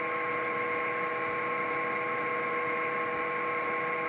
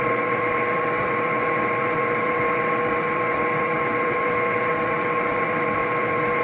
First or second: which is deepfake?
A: second